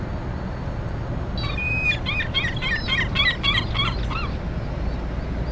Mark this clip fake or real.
real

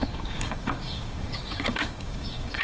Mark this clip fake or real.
fake